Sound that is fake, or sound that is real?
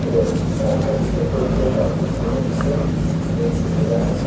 real